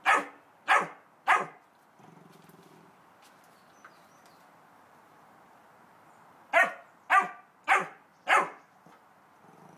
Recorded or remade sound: recorded